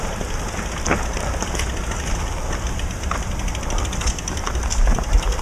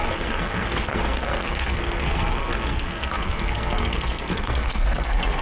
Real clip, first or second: first